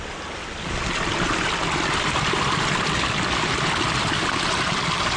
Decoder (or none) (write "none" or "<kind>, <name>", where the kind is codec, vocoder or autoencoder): none